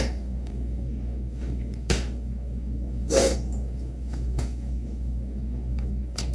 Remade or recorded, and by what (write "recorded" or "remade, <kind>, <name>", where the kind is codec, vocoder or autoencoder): remade, codec, DAC